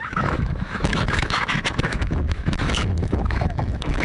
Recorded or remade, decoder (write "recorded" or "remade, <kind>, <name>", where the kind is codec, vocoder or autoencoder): remade, autoencoder, DAC-VAE